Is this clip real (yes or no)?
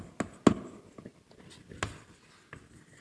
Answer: yes